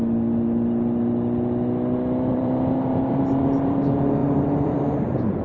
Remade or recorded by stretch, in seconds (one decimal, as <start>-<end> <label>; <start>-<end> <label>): 0.0-2.3 recorded; 2.3-3.8 remade; 3.8-4.2 recorded; 4.2-5.4 remade